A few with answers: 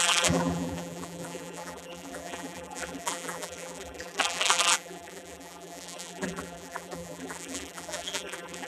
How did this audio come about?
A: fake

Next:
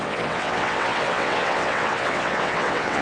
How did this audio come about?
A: fake